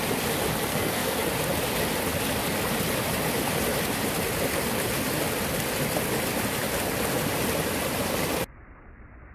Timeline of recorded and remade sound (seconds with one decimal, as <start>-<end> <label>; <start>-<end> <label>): 0.0-0.7 recorded; 0.7-1.2 remade; 1.2-9.3 recorded